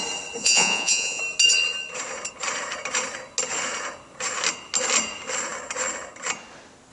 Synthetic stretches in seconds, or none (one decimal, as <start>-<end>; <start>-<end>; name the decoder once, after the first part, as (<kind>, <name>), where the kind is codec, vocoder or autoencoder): 0.4-1.2 (vocoder, Vocos)